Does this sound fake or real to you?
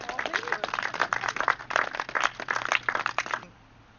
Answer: real